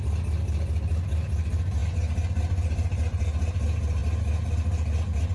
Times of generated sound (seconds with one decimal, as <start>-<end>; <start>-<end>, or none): none